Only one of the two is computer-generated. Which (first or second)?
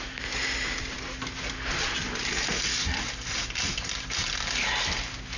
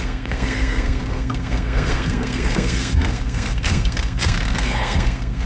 second